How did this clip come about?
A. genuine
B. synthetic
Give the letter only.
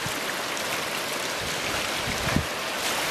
A